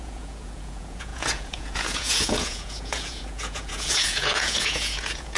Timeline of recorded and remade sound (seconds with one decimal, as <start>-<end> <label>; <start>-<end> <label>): 0.0-5.4 remade